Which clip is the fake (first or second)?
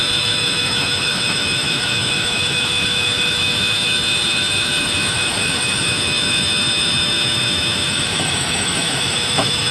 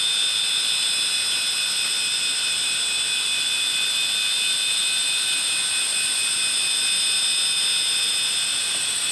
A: first